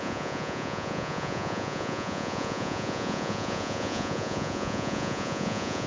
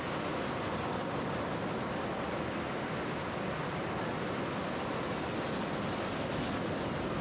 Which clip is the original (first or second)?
second